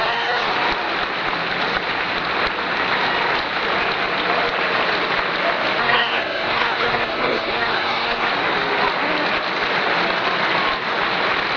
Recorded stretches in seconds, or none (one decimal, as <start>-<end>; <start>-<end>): 0.5-5.8; 8.3-11.6